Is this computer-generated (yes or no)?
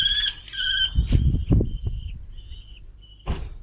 no